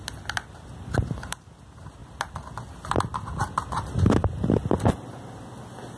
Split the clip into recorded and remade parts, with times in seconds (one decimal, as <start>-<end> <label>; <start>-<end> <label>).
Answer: 0.0-6.0 recorded